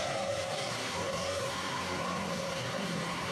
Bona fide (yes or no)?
no